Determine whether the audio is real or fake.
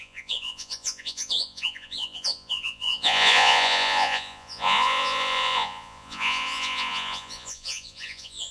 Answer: fake